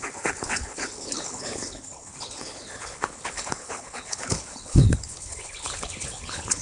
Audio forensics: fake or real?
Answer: fake